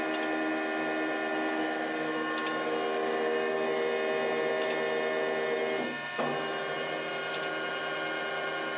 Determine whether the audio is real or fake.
real